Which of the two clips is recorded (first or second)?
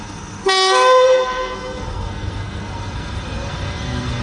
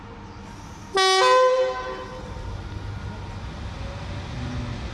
second